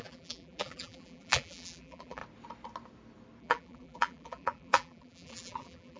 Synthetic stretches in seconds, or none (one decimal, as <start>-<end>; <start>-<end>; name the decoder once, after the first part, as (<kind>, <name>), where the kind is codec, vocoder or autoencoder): 0.0-2.2 (vocoder, BigVGAN v2); 3.4-6.0